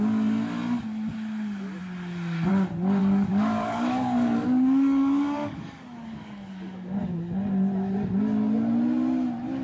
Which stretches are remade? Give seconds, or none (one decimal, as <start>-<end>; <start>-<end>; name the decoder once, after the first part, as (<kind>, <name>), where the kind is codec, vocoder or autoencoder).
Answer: 3.0-7.0 (codec, DAC)